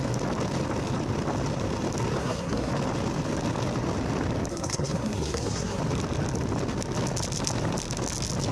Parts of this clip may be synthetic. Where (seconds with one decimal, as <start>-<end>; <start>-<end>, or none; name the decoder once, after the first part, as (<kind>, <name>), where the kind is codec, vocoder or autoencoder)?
2.2-2.7 (codec, SNAC); 4.5-5.8